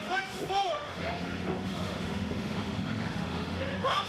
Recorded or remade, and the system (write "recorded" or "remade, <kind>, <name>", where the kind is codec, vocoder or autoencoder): remade, autoencoder, DAC-VAE